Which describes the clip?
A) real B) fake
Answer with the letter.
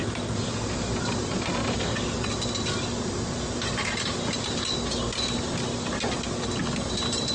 A